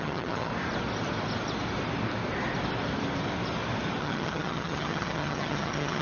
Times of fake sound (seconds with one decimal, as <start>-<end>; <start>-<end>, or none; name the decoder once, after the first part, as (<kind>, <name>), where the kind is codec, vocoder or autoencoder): 0.0-0.5 (vocoder, HiFi-GAN); 4.0-6.0